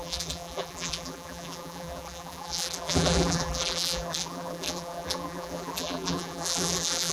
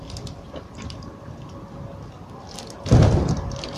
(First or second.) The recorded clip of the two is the second